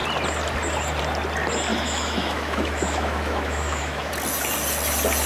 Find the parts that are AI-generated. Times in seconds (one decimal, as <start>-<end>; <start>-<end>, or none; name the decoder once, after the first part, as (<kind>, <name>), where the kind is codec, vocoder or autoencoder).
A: 1.7-4.1 (autoencoder, DAC-VAE)